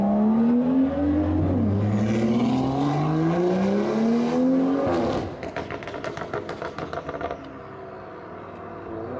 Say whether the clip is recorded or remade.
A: recorded